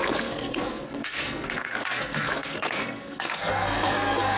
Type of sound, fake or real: fake